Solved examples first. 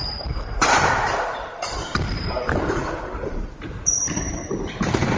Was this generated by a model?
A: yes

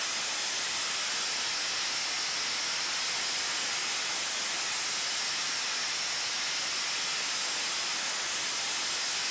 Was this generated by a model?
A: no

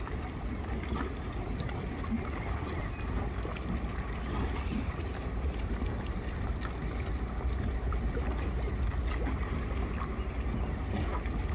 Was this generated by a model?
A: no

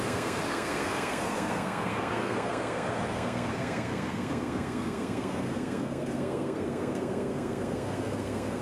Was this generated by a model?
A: yes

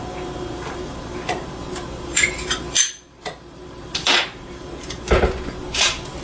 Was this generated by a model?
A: yes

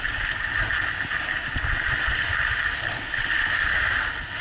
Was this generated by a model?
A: no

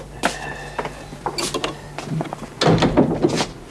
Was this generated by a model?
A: no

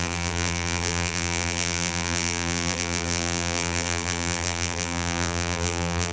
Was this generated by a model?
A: yes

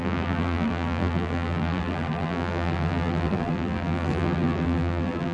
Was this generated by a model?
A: yes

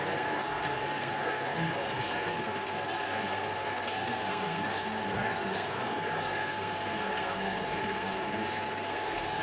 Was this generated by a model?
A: yes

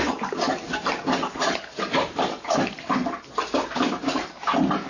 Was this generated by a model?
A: no